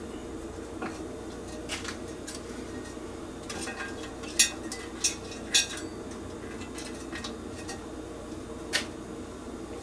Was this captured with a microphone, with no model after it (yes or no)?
yes